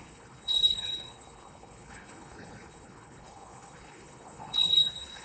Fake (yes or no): yes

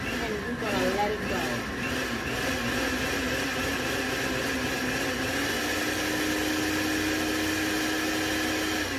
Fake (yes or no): no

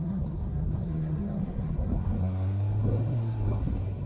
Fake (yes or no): yes